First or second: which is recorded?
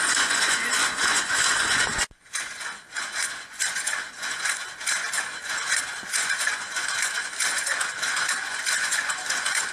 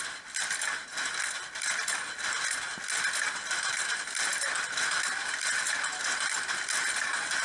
second